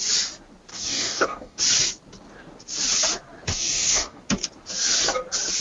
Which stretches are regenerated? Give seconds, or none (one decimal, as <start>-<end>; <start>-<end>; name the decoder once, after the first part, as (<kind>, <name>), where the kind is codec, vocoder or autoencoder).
0.7-1.6 (codec, DAC); 3.5-4.2